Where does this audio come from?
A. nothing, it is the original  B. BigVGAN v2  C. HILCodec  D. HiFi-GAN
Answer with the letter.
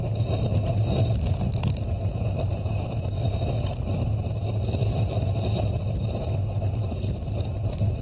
B